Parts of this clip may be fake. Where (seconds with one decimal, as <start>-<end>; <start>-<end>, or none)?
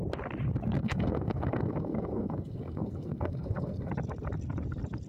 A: 0.8-3.9